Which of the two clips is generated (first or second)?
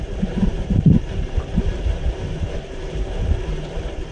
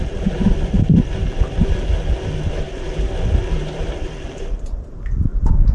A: first